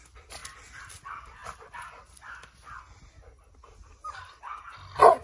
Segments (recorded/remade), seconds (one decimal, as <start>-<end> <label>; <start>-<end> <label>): 0.0-0.4 recorded; 0.4-0.9 remade; 0.9-5.2 recorded